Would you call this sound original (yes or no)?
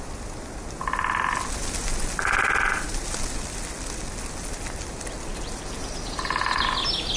yes